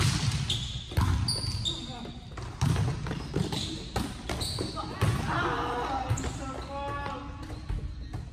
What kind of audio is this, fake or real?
real